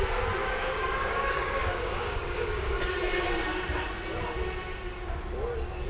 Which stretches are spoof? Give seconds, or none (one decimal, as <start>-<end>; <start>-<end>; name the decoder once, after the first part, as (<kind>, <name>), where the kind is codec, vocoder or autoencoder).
0.4-2.8 (codec, DAC)